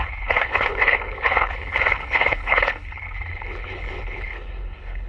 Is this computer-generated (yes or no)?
yes